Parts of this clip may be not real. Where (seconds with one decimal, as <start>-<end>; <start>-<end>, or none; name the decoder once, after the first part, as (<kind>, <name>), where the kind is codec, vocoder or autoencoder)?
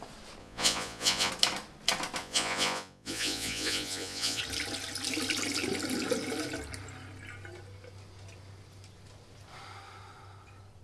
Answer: 0.4-1.3 (vocoder, Vocos); 2.2-4.4